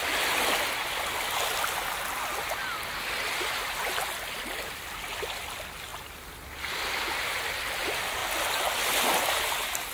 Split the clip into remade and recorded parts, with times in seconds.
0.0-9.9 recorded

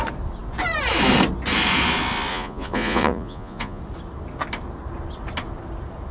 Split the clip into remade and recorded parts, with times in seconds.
0.0-2.3 recorded; 2.3-3.8 remade; 3.8-6.1 recorded

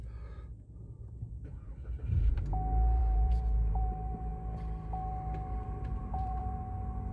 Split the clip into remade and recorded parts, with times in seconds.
0.0-0.5 recorded; 0.5-2.3 remade; 2.3-3.0 recorded; 3.0-4.3 remade; 4.3-6.0 recorded; 6.0-6.5 remade; 6.5-7.1 recorded